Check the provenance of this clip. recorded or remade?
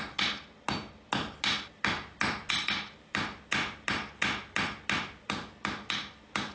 recorded